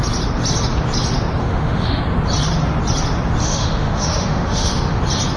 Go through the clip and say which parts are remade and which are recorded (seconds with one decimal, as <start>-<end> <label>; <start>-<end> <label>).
0.0-1.4 recorded; 1.4-2.0 remade; 2.0-3.4 recorded; 3.4-5.0 remade; 5.0-5.4 recorded